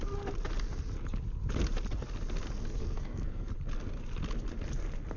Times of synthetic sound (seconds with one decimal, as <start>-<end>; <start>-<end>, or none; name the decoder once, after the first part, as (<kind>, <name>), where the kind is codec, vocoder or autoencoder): 2.8-3.5 (codec, SNAC)